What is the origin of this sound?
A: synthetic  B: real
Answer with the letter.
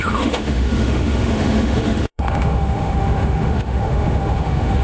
A